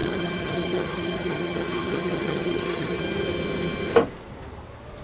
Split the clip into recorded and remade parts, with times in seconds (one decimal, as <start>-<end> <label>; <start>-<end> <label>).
0.0-3.0 remade; 3.0-5.0 recorded